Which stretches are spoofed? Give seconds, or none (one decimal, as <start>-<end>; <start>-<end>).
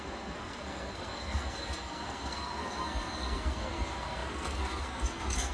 0.0-5.5